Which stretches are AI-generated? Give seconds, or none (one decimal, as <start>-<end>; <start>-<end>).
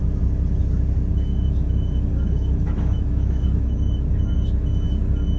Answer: 1.3-4.5